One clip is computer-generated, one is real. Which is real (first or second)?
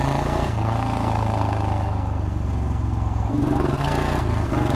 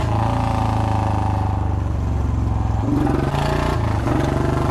second